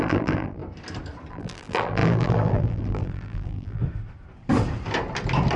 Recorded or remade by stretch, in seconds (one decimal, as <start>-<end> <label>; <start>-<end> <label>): 0.0-0.6 remade; 0.6-1.3 recorded; 1.3-3.8 remade; 3.8-5.6 recorded

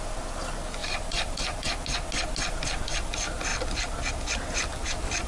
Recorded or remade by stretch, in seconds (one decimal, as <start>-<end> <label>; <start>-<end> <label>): 0.0-0.8 recorded; 0.8-1.7 remade; 1.7-4.7 recorded; 4.7-5.3 remade

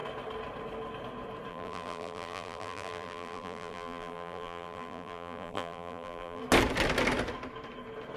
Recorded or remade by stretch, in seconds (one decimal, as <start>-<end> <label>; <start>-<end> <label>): 0.0-1.5 recorded; 1.5-6.4 remade; 6.4-8.2 recorded

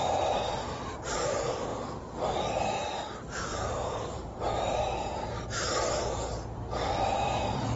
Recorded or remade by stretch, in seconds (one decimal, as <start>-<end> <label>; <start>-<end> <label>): 0.0-3.5 recorded; 3.5-4.4 remade; 4.4-7.8 recorded

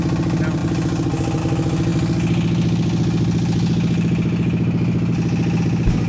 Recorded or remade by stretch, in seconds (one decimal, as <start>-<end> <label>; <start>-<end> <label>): 0.0-6.1 recorded